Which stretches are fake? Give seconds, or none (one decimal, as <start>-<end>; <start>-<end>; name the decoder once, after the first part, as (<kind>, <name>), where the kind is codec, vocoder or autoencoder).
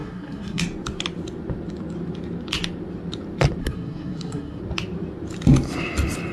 0.0-0.6 (codec, SNAC); 3.6-4.6